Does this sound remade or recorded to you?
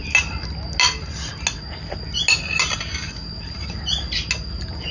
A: recorded